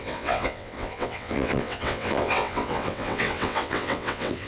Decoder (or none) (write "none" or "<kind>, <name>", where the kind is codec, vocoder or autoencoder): vocoder, WaveNeXt